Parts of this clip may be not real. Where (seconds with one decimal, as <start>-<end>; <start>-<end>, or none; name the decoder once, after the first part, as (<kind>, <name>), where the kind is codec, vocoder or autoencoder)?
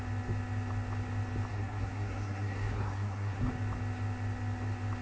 1.5-3.5 (codec, SNAC)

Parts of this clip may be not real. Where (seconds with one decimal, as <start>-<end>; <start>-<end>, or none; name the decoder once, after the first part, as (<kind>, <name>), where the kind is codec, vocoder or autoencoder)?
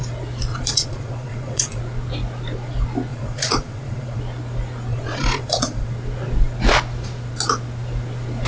0.5-1.8 (vocoder, Vocos); 3.1-4.2; 4.9-5.9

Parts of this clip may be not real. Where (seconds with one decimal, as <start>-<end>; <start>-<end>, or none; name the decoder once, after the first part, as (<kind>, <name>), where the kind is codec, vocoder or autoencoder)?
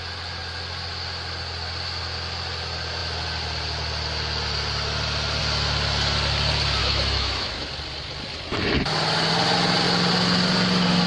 6.8-7.7 (autoencoder, DAC-VAE)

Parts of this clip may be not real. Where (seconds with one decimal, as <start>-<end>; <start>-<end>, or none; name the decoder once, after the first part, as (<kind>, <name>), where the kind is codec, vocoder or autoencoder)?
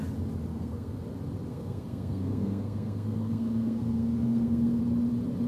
0.5-1.0 (codec, SNAC); 1.5-4.8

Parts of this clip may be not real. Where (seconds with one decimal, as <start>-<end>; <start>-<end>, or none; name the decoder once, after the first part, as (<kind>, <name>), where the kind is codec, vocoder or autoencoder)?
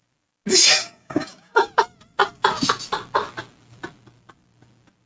0.8-1.7 (codec, DAC)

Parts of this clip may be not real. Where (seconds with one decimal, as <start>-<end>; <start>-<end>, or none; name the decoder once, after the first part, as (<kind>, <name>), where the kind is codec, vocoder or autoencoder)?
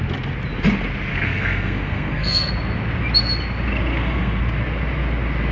1.1-2.5 (codec, SNAC); 3.9-4.4